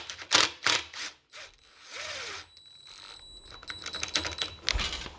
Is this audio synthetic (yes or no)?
no